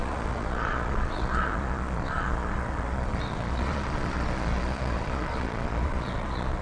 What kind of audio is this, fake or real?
fake